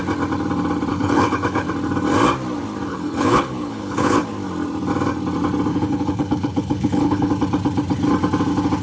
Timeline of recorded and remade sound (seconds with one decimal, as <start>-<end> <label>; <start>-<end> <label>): 0.0-0.9 recorded; 0.9-1.7 remade; 1.7-2.9 recorded; 2.9-4.2 remade; 4.2-5.7 recorded; 5.7-7.3 remade; 7.3-8.8 recorded